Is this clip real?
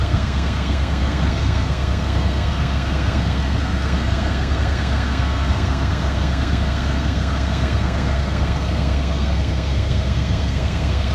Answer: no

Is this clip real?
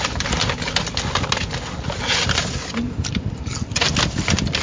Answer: yes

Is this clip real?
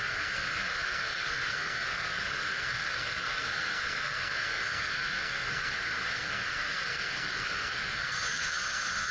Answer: no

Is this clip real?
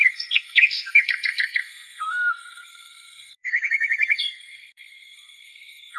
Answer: no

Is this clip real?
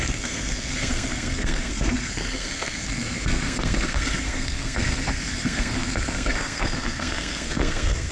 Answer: no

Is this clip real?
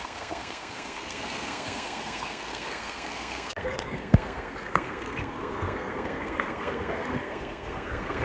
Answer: no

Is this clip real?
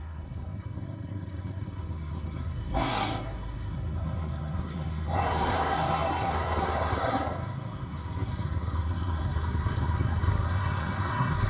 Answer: no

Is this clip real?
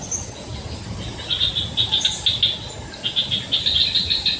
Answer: yes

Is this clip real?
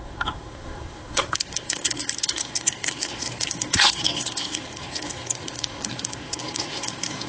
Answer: no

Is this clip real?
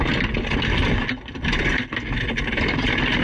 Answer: yes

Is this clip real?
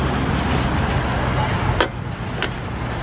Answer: yes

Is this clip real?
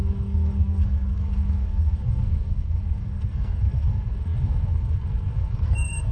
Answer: no